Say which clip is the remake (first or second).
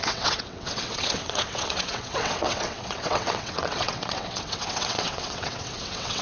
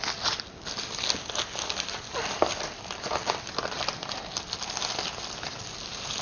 first